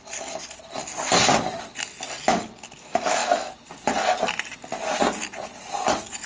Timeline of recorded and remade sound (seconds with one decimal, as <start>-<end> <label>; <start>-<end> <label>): 0.0-6.3 recorded